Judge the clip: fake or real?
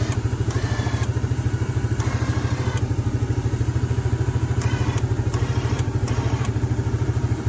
fake